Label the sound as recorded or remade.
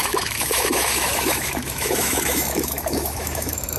remade